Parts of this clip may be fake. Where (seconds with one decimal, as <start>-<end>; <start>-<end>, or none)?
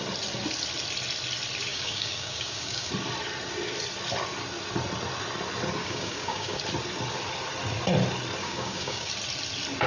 1.7-2.9; 5.8-6.6; 8.4-9.1